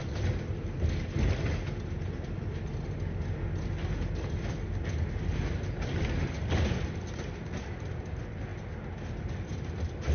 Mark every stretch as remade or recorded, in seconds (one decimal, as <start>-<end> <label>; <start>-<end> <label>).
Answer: 0.0-10.1 recorded